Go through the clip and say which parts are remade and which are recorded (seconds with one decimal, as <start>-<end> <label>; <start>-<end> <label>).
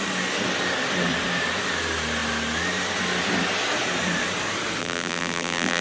0.0-4.8 recorded; 4.8-5.8 remade